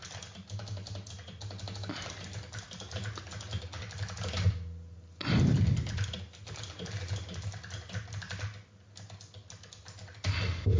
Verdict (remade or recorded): recorded